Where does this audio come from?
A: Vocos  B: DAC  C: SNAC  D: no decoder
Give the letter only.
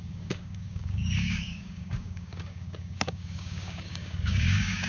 B